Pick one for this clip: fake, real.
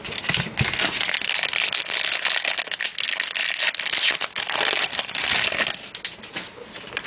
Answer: real